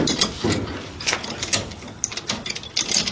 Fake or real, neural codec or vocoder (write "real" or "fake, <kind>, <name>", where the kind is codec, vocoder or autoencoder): real